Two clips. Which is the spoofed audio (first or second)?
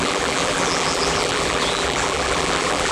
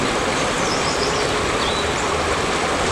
first